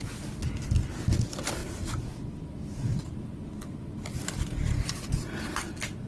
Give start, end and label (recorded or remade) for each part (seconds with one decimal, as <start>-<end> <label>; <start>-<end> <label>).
0.0-6.1 recorded